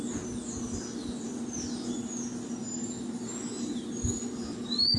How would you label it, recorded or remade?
recorded